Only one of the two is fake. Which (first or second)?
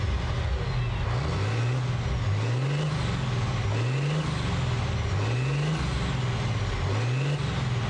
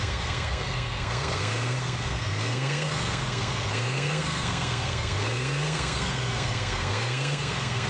second